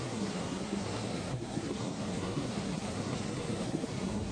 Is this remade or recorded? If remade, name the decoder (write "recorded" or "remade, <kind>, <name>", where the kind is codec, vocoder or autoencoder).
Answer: remade, codec, SNAC